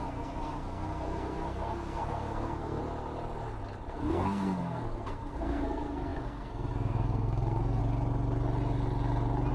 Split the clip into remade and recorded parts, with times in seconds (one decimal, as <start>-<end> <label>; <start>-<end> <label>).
0.0-2.8 remade; 2.8-3.9 recorded; 3.9-7.8 remade; 7.8-9.5 recorded